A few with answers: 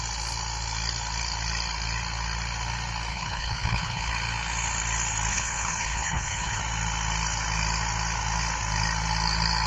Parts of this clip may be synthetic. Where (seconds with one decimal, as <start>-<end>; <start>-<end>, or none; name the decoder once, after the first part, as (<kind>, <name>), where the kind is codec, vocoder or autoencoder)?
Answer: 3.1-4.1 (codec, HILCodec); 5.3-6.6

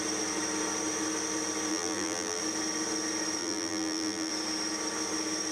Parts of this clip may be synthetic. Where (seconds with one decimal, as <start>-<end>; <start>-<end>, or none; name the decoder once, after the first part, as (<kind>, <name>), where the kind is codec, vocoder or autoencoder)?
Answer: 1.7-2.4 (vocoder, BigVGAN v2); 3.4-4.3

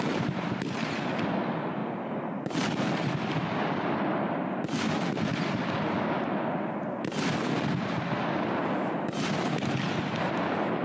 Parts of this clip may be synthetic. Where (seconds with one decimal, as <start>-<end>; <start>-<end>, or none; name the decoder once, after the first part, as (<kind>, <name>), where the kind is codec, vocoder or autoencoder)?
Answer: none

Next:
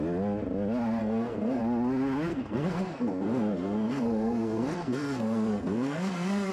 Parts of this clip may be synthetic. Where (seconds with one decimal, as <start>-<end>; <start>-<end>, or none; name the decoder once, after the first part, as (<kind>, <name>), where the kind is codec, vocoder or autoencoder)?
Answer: 1.0-1.6 (codec, SNAC); 2.3-6.5